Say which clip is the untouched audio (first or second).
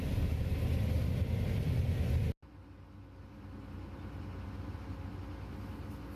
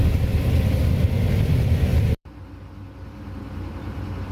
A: first